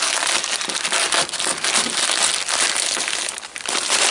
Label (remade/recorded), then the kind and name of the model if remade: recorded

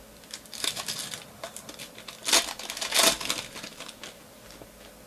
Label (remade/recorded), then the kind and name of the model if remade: recorded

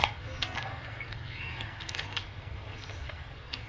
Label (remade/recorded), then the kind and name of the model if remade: remade, codec, SNAC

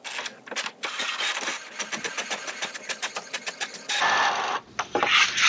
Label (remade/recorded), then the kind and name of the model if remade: recorded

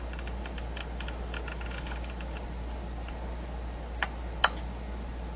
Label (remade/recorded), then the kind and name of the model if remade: recorded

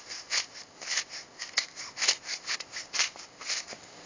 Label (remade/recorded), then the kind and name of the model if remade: remade, codec, ZipCodec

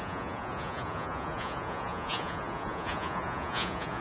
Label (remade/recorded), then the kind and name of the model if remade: remade, vocoder, Vocos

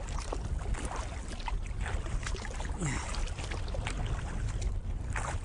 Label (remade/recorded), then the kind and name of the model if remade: recorded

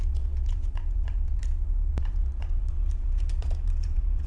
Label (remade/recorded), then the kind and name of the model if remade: remade, vocoder, Vocos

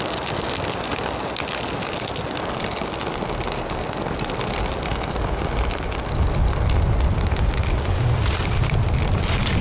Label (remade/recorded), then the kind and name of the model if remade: recorded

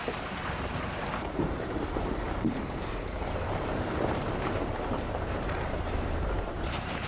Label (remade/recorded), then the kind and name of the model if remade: remade, vocoder, BigVGAN v2